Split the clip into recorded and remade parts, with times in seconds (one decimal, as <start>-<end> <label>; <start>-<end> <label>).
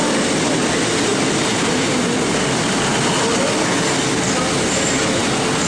0.0-5.7 recorded